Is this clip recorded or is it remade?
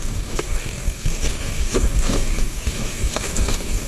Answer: remade